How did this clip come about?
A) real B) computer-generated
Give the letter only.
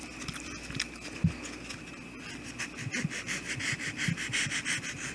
A